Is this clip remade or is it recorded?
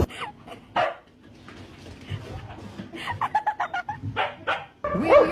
recorded